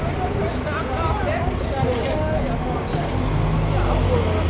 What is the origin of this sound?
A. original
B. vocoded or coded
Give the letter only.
A